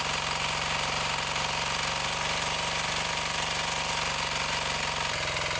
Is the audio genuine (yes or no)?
yes